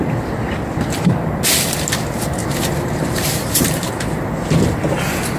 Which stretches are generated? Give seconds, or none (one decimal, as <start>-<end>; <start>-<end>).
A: 2.4-3.9